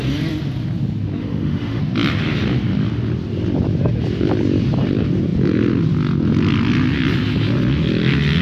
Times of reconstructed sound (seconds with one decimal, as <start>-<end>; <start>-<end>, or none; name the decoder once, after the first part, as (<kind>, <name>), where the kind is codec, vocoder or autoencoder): 1.2-1.8 (autoencoder, DAC-VAE)